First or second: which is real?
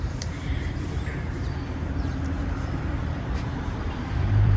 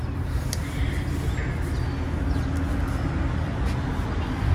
second